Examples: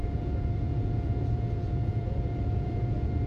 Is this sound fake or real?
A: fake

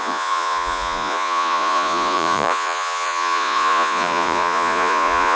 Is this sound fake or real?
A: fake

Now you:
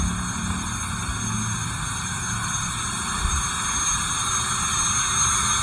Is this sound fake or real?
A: real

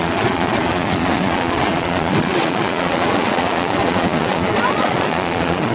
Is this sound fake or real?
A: fake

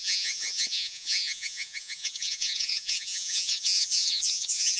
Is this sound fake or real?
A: fake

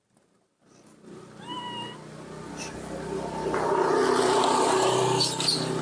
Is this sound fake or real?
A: real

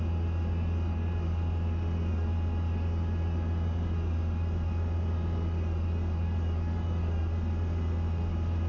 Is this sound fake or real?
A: real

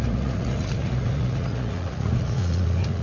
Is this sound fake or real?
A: fake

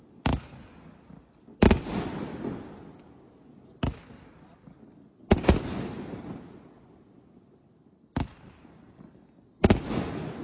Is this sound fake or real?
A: real